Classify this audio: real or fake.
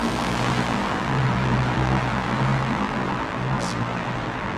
fake